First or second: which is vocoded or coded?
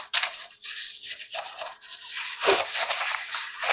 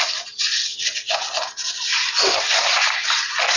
first